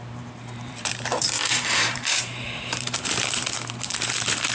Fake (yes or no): yes